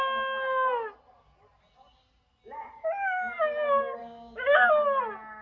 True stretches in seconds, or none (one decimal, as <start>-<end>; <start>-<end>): 0.0-4.0; 4.7-5.4